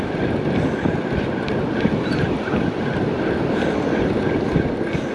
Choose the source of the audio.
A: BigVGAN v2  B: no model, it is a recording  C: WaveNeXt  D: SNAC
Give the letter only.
B